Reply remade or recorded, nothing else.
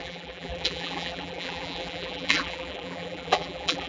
remade